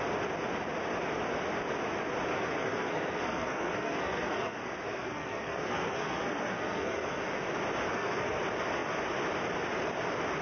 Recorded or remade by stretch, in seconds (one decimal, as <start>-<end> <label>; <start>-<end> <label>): 0.0-2.3 recorded; 2.3-7.2 remade; 7.2-7.9 recorded; 7.9-8.4 remade; 8.4-10.4 recorded